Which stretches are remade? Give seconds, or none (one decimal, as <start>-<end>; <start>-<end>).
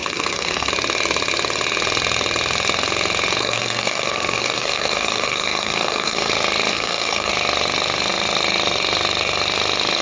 0.0-0.7; 3.4-6.3; 6.7-7.3